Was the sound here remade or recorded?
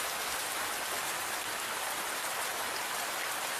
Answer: recorded